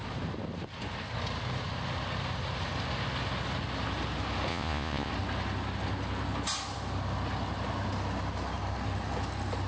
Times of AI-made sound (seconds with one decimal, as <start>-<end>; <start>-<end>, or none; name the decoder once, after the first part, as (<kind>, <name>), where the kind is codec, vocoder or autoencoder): 4.5-5.1 (vocoder, Vocos)